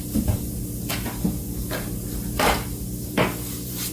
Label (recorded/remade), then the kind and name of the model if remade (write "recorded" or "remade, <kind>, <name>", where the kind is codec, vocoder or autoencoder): remade, vocoder, BigVGAN v2